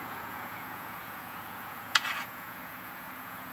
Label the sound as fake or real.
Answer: fake